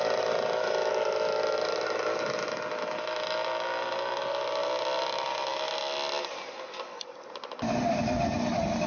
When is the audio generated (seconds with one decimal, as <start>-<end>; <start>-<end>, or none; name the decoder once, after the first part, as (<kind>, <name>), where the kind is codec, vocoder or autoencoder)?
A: none

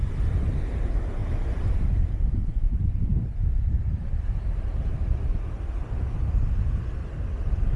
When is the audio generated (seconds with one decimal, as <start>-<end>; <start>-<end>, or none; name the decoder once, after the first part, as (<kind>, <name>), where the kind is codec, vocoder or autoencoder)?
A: 1.2-5.4 (vocoder, BigVGAN v2)

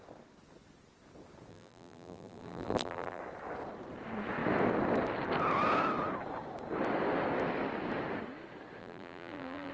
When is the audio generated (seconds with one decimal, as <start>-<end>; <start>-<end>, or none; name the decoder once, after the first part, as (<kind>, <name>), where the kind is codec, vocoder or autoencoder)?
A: 1.5-3.2 (vocoder, BigVGAN v2); 8.8-9.7

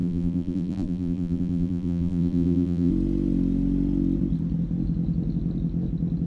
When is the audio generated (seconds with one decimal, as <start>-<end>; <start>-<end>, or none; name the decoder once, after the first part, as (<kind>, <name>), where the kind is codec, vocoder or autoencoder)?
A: 0.0-2.9 (vocoder, BigVGAN v2)